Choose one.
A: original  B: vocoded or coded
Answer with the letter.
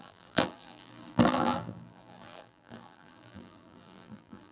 B